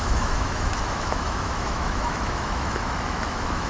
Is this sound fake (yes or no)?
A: yes